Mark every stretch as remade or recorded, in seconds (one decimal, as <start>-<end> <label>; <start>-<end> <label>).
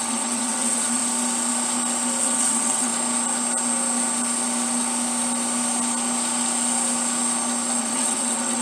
0.0-1.0 remade; 1.0-2.2 recorded; 2.2-2.9 remade; 2.9-7.8 recorded; 7.8-8.6 remade